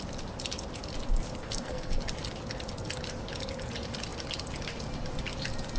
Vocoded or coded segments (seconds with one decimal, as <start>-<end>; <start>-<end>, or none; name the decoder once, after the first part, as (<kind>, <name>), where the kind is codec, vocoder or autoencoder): 1.4-2.0 (codec, SNAC)